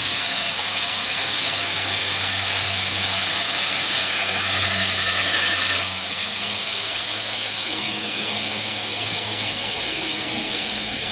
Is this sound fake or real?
fake